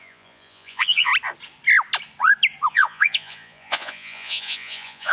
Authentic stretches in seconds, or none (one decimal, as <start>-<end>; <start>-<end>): 1.1-2.7